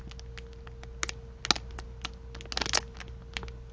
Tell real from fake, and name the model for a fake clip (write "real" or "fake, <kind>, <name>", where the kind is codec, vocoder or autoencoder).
real